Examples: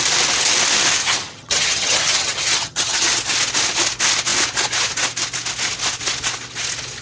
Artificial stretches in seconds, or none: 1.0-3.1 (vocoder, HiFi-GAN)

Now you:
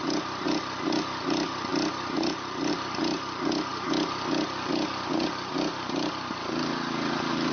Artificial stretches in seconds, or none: none

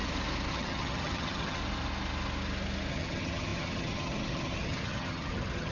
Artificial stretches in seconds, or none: 0.5-1.6 (vocoder, HiFi-GAN); 2.9-5.7

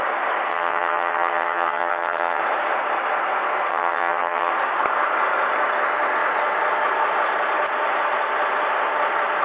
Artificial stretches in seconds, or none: 0.5-2.4 (vocoder, HiFi-GAN); 3.7-4.5

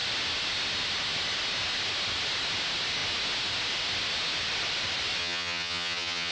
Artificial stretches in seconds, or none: 5.2-6.3 (vocoder, HiFi-GAN)

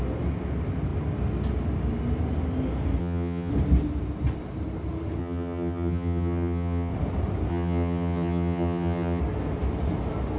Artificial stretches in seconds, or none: 3.0-3.5 (vocoder, HiFi-GAN); 5.2-6.9; 7.5-9.2